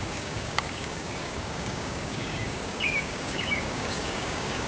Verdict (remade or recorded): remade